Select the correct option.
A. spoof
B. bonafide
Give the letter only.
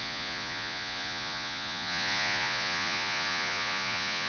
A